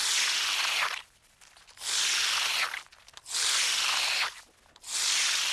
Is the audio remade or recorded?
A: recorded